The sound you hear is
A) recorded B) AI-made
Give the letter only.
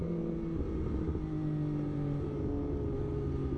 A